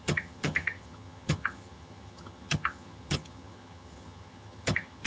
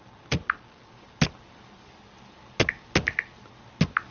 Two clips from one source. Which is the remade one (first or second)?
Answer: first